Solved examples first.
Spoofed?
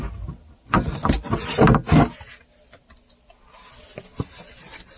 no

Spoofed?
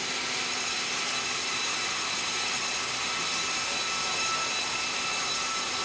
no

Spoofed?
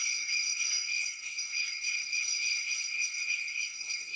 yes